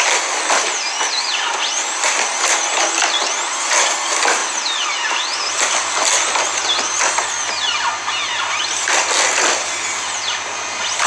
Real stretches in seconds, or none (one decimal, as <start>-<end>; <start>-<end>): 0.0-11.1